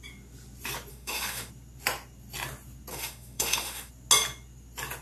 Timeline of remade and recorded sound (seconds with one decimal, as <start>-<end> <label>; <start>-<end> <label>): 0.0-0.9 recorded; 0.9-1.5 remade; 1.5-2.9 recorded; 2.9-3.9 remade; 3.9-5.0 recorded